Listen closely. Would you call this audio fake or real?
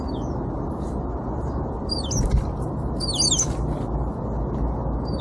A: real